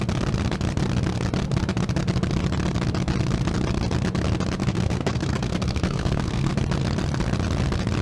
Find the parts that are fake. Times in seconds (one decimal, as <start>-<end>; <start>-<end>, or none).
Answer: 4.6-6.5